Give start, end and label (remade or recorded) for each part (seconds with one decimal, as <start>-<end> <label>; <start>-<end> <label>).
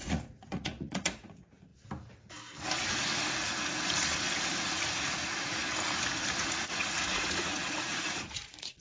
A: 0.0-1.7 remade; 1.7-4.5 recorded; 4.5-5.6 remade; 5.6-6.4 recorded; 6.4-8.8 remade